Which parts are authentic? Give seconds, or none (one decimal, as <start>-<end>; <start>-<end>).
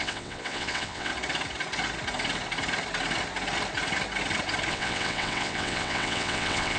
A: 1.1-4.7